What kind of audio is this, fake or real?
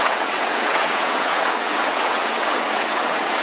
fake